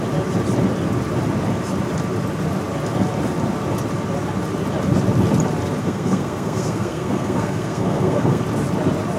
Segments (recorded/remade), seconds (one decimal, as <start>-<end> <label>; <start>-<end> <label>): 0.0-5.8 recorded; 5.8-8.4 remade; 8.4-9.2 recorded

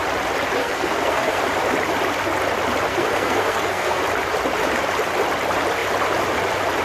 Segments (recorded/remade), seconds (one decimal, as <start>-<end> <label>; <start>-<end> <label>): 0.0-0.6 recorded; 0.6-1.4 remade; 1.4-2.9 recorded; 2.9-4.0 remade; 4.0-6.8 recorded

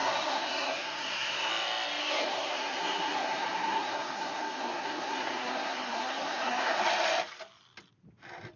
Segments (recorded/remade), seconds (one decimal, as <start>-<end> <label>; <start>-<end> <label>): 0.0-1.5 remade; 1.5-2.0 recorded; 2.0-6.8 remade; 6.8-8.6 recorded

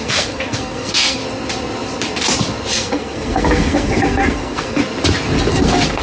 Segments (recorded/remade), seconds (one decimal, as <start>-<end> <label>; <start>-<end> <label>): 0.0-1.2 remade; 1.2-2.7 recorded; 2.7-4.8 remade; 4.8-5.5 recorded; 5.5-6.0 remade

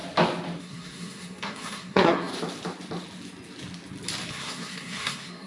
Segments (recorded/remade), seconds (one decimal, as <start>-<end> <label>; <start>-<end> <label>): 0.0-0.6 recorded; 0.6-2.3 remade; 2.3-4.3 recorded; 4.3-5.5 remade